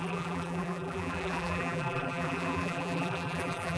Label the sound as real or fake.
fake